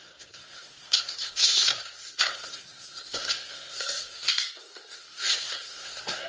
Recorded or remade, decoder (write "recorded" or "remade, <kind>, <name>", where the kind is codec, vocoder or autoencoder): remade, codec, SNAC